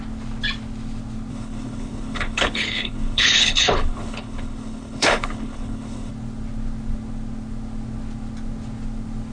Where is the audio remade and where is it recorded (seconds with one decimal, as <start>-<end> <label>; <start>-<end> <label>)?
0.0-1.3 recorded; 1.3-6.1 remade; 6.1-9.3 recorded